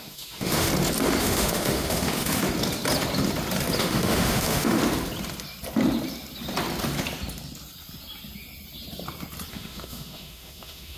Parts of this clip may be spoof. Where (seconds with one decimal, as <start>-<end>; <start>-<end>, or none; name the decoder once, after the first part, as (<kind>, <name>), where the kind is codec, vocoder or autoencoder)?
0.0-0.7 (autoencoder, DAC-VAE); 1.2-2.4; 3.8-4.8; 9.5-11.0